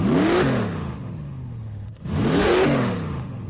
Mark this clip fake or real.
fake